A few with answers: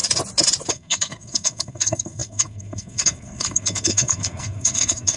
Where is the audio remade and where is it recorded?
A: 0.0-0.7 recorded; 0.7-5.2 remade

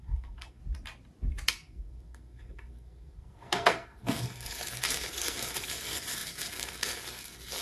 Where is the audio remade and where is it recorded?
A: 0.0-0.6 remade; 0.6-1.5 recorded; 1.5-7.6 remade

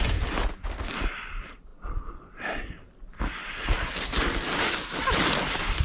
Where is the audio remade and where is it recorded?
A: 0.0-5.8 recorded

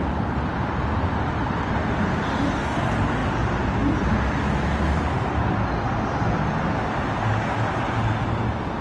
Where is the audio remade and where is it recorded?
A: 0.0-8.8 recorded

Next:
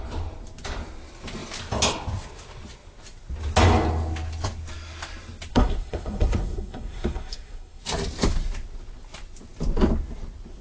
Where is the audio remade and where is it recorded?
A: 0.0-5.5 recorded; 5.5-7.8 remade; 7.8-10.6 recorded

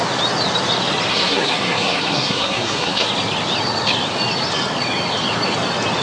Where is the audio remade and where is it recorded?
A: 0.0-1.1 recorded; 1.1-3.1 remade; 3.1-6.0 recorded

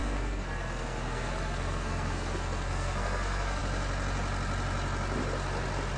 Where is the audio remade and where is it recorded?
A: 0.0-3.6 remade; 3.6-6.0 recorded

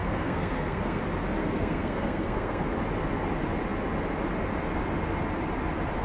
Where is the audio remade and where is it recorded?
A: 0.0-1.0 remade; 1.0-1.4 recorded; 1.4-2.7 remade; 2.7-6.0 recorded